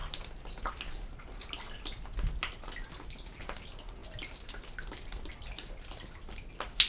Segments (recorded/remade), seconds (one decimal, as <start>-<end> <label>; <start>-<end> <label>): 0.0-6.9 recorded